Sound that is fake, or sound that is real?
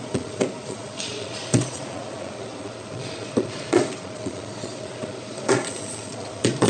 fake